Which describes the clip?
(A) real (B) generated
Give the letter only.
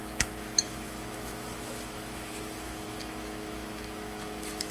B